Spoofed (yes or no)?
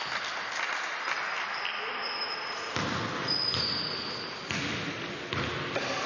no